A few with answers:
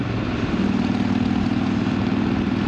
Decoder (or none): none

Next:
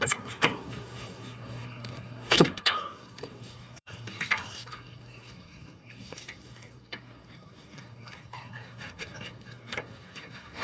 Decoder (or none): codec, SNAC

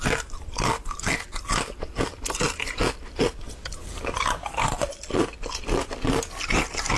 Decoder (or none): none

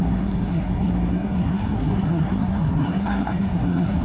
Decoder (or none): codec, SNAC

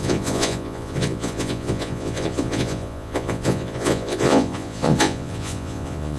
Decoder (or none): vocoder, Vocos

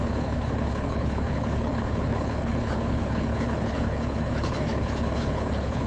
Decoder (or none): codec, HILCodec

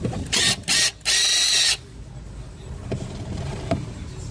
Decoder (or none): none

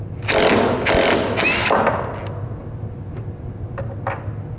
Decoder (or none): none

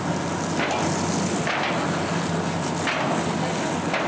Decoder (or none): none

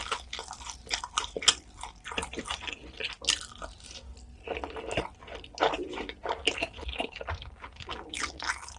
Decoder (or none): none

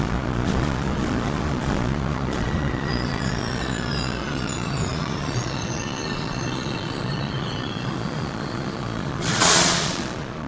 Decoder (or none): vocoder, Vocos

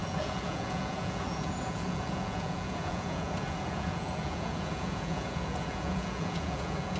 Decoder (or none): vocoder, Vocos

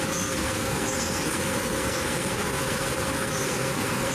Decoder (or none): codec, SNAC